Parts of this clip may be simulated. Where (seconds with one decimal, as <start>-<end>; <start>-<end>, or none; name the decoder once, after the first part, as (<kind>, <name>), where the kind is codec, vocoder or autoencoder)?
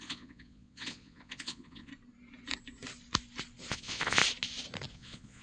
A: 0.0-1.9 (vocoder, Vocos); 3.7-4.2; 4.9-5.4